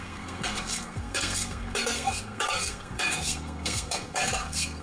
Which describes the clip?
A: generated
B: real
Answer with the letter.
A